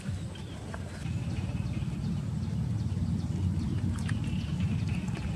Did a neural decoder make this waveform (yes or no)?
no